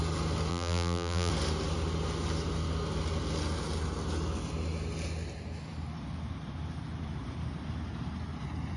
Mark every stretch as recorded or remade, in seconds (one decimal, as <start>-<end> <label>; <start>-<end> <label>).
0.0-0.5 recorded; 0.5-1.3 remade; 1.3-8.8 recorded